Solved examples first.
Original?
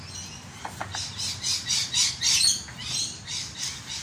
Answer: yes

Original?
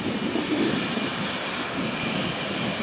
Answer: yes